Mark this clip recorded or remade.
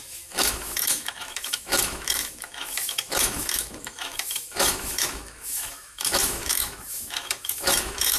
remade